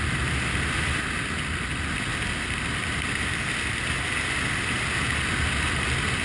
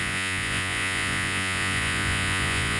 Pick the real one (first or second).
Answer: first